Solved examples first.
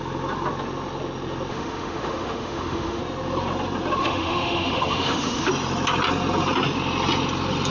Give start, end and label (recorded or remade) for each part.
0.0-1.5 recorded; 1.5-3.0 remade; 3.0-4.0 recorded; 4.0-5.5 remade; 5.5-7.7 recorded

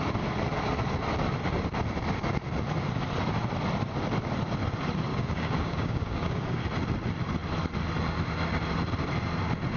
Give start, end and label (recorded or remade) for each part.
0.0-5.1 recorded; 5.1-6.6 remade; 6.6-9.8 recorded

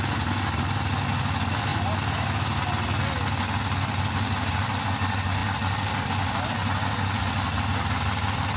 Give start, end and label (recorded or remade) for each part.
0.0-8.6 recorded

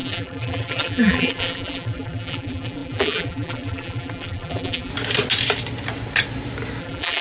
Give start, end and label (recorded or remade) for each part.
0.0-4.9 remade; 4.9-6.8 recorded; 6.8-7.2 remade